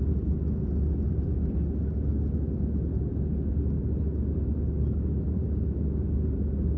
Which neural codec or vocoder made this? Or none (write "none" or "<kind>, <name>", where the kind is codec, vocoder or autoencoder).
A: none